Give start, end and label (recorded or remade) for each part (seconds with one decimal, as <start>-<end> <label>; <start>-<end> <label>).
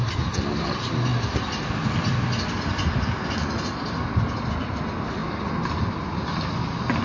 0.0-7.0 recorded